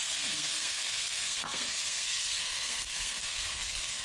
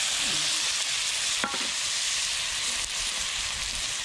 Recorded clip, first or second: second